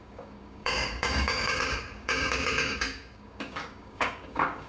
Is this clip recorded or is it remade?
remade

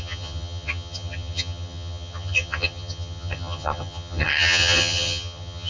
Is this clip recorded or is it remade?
remade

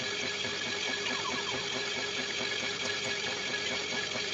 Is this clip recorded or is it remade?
recorded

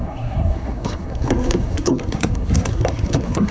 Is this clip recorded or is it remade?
remade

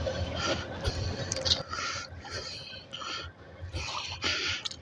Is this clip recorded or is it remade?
recorded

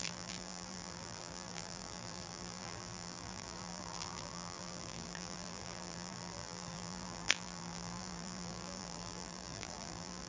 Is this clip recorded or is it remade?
remade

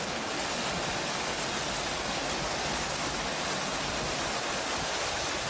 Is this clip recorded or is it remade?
recorded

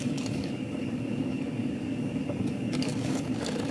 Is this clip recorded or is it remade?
remade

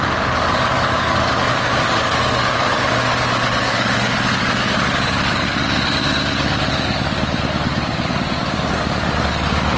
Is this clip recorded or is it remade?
remade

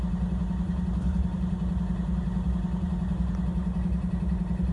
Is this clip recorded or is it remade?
recorded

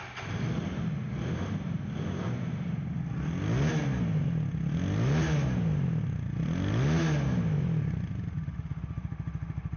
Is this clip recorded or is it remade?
recorded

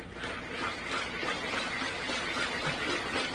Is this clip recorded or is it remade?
recorded